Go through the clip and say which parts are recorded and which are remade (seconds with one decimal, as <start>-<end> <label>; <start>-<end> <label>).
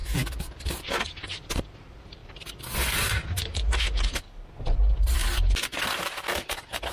0.0-5.2 recorded; 5.2-6.5 remade; 6.5-6.9 recorded